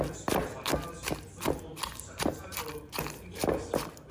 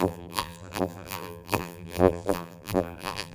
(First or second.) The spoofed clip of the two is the second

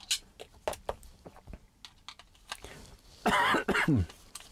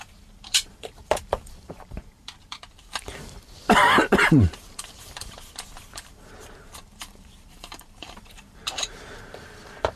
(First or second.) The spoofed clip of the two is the second